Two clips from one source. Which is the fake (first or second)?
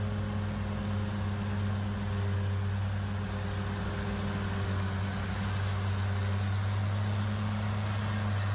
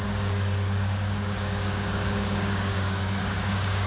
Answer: second